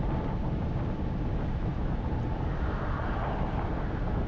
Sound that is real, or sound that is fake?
real